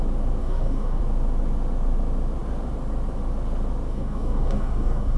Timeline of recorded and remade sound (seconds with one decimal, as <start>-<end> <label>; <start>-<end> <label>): 0.0-0.4 recorded; 0.4-1.0 remade; 1.0-3.9 recorded; 3.9-5.2 remade